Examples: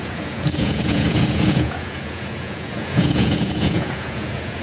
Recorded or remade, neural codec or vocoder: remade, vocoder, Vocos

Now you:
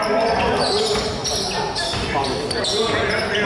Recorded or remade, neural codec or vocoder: recorded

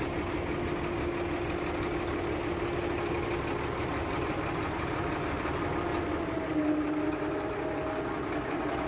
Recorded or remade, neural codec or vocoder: recorded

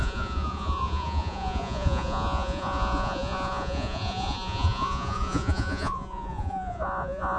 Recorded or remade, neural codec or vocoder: remade, vocoder, Vocos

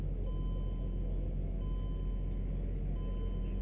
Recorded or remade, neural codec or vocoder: recorded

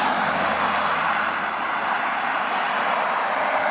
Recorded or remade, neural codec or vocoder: recorded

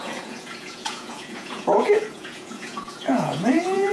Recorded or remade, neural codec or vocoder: remade, vocoder, Vocos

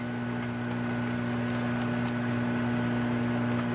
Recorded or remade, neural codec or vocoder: recorded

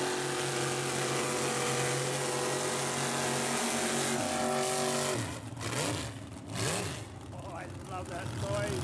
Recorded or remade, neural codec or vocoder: recorded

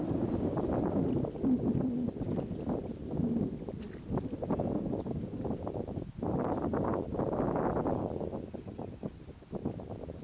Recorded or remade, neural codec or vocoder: recorded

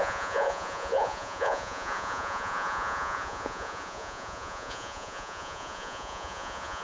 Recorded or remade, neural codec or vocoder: remade, vocoder, Vocos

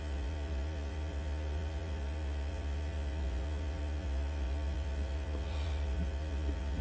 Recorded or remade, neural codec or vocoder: remade, vocoder, Vocos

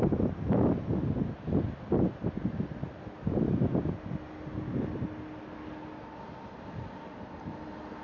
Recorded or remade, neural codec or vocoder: recorded